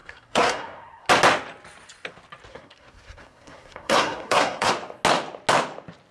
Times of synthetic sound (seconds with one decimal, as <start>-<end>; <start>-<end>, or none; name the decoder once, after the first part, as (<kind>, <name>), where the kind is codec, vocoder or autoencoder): 0.0-1.1 (codec, SNAC); 2.5-4.7